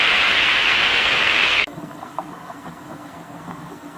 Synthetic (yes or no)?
yes